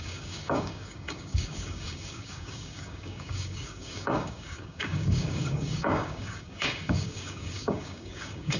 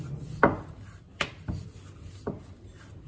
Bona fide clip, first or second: second